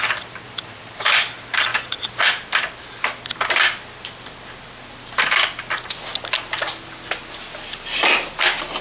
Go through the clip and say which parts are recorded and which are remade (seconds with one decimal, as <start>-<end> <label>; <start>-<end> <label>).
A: 0.0-8.8 recorded